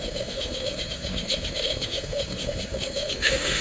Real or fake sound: fake